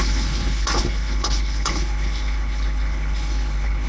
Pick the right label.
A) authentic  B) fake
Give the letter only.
B